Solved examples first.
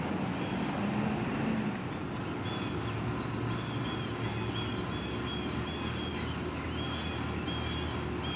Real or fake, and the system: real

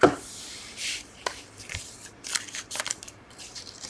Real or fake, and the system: fake, vocoder, BigVGAN v2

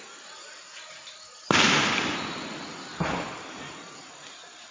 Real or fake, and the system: real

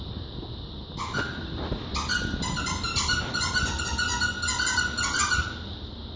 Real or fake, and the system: real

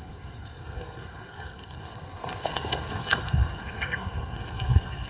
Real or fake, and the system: fake, codec, SNAC